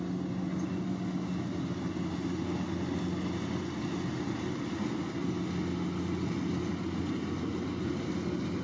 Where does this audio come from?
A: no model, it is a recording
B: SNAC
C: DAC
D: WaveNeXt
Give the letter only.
A